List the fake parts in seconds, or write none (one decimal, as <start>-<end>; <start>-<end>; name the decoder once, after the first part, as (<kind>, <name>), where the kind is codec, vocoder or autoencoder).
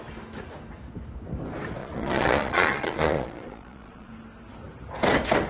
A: 1.8-4.1 (vocoder, Vocos)